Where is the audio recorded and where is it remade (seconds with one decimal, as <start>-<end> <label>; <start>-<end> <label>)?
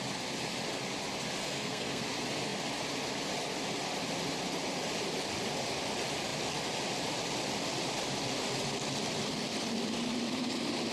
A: 0.0-1.4 recorded; 1.4-2.0 remade; 2.0-10.9 recorded